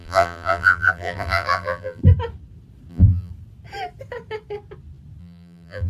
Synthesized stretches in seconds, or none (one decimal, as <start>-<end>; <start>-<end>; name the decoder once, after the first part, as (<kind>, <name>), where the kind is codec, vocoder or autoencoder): 0.0-2.0 (vocoder, BigVGAN v2); 2.9-3.3; 5.2-5.9